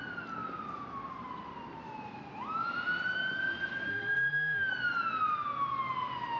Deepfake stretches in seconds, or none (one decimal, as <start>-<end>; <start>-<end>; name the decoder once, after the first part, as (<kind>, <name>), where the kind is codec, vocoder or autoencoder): 3.9-4.7 (autoencoder, DAC-VAE)